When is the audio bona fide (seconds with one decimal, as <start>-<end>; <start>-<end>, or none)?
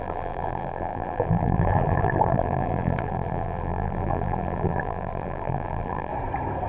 6.1-6.7